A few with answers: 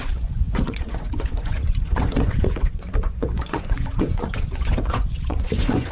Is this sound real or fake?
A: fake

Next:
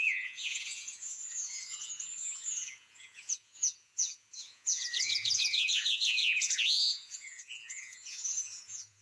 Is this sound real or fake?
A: fake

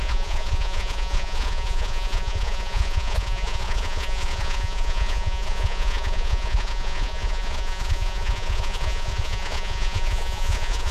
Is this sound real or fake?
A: fake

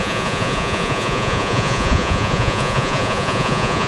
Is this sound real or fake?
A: fake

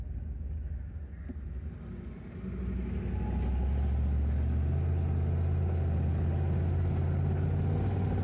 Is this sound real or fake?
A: real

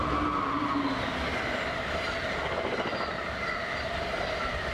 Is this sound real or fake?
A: real